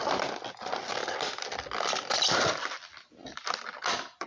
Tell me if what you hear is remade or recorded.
recorded